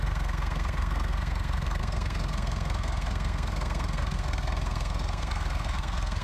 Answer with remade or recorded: remade